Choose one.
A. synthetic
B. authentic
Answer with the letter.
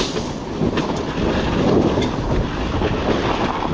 B